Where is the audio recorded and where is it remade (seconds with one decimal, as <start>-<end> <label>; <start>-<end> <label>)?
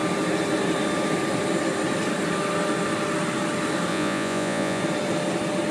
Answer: 0.0-3.9 recorded; 3.9-4.8 remade; 4.8-5.7 recorded